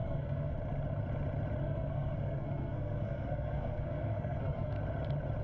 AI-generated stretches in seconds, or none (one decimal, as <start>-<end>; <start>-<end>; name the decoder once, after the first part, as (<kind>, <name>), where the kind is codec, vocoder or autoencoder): 0.0-0.5 (codec, SNAC); 1.6-4.8